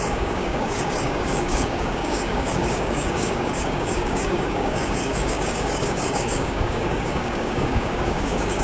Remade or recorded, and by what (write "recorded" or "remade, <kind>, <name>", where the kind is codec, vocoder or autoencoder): remade, codec, DAC